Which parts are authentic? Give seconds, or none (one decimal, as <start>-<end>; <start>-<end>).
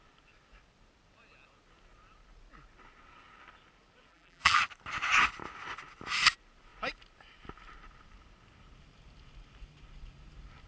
0.0-4.1; 4.6-10.7